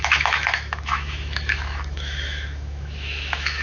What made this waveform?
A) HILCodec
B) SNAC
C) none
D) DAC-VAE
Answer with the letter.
D